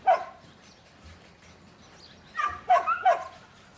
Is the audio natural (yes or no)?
yes